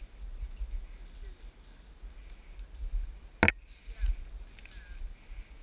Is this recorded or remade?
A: recorded